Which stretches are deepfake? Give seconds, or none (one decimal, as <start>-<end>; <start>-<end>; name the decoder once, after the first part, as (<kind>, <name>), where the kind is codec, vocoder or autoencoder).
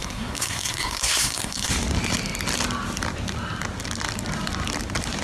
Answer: 0.0-1.7 (codec, SNAC)